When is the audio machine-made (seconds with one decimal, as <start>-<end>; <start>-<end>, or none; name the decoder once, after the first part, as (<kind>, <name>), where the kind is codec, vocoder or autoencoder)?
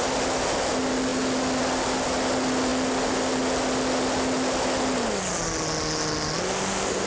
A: none